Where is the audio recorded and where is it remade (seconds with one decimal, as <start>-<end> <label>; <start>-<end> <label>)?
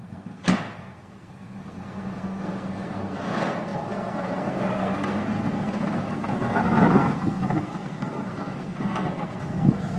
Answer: 0.0-10.0 remade